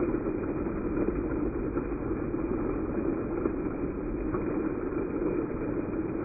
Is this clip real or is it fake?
real